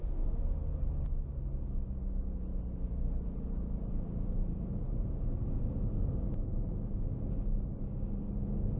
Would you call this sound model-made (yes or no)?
no